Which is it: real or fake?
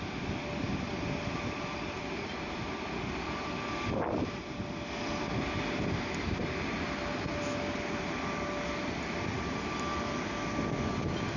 real